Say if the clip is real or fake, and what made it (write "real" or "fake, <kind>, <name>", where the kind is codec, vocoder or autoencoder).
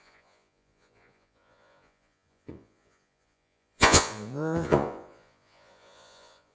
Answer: fake, vocoder, Vocos